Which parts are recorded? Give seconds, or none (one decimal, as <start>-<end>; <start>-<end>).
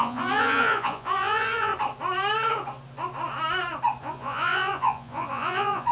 1.7-4.0